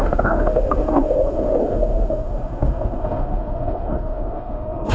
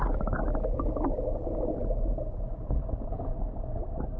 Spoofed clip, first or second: first